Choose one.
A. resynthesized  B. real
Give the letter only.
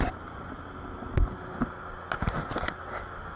B